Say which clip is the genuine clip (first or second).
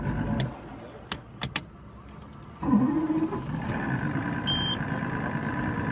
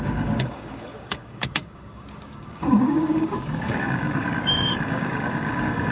first